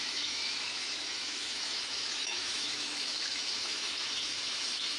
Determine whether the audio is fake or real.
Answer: fake